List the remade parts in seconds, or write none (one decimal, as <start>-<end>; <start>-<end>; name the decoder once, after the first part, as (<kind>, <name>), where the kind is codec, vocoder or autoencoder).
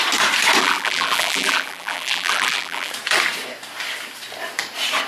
0.6-2.9 (vocoder, BigVGAN v2)